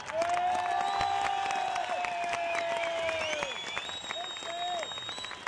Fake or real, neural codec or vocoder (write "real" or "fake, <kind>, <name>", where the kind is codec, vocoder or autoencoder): real